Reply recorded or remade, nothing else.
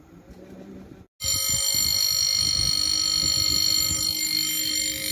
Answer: recorded